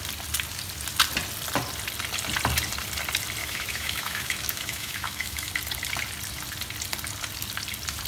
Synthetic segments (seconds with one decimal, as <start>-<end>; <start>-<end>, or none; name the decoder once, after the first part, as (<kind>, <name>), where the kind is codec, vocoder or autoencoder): 3.4-5.5 (autoencoder, DAC-VAE)